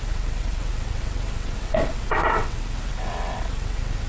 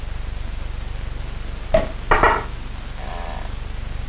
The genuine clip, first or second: second